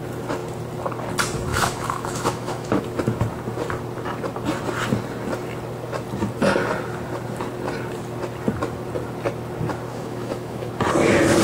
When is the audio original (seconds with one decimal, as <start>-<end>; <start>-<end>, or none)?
0.0-1.5; 2.8-9.9; 10.7-11.4